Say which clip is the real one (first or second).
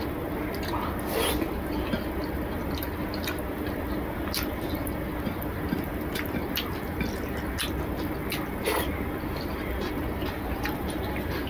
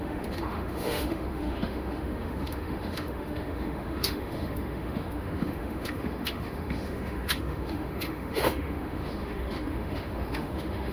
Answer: first